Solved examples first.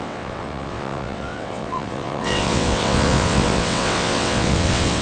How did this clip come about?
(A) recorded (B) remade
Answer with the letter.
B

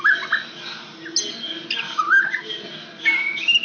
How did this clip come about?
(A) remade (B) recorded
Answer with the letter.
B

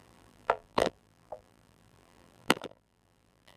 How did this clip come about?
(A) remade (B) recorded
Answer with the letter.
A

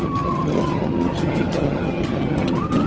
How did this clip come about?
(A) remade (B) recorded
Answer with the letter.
A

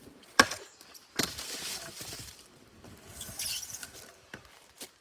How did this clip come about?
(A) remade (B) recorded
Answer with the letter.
A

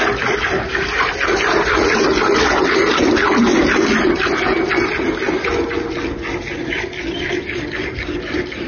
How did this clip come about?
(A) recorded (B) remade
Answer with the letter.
A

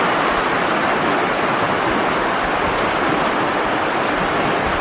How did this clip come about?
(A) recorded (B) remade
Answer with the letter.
A